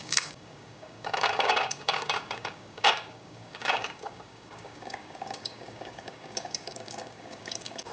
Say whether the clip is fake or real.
fake